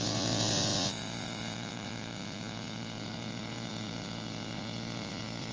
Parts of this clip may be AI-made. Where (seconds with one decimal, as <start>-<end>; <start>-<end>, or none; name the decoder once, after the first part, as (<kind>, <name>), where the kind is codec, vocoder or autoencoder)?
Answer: 0.0-5.5 (vocoder, Vocos)